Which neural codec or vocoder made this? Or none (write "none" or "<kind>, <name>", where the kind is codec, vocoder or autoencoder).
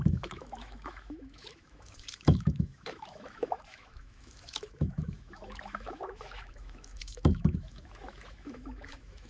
autoencoder, DAC-VAE